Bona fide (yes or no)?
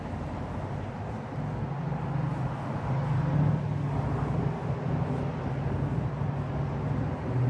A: yes